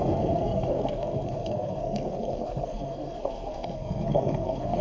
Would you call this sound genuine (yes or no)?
no